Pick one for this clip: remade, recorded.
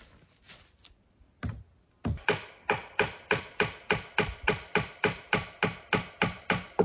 recorded